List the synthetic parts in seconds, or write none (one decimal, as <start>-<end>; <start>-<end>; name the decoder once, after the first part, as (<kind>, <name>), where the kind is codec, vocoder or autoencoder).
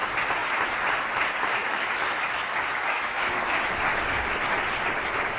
1.6-3.7 (autoencoder, DAC-VAE)